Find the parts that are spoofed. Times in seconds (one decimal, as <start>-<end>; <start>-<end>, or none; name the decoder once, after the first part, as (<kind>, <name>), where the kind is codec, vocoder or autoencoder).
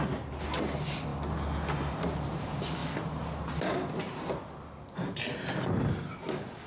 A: none